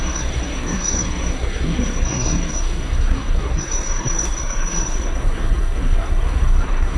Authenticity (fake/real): fake